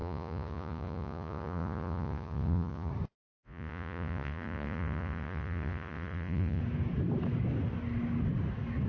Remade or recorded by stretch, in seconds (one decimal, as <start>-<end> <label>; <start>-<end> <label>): 0.0-2.9 remade; 2.9-3.3 recorded; 3.3-6.6 remade; 6.6-8.9 recorded